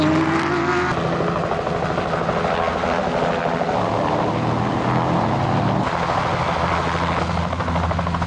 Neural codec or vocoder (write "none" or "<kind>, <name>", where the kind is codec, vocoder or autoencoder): none